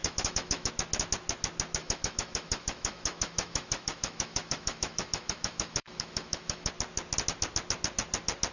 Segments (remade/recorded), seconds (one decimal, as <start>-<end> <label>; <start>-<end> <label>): 0.0-0.7 remade; 0.7-1.8 recorded; 1.8-6.7 remade; 6.7-8.5 recorded